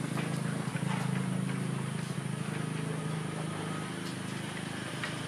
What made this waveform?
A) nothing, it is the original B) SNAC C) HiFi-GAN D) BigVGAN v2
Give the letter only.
A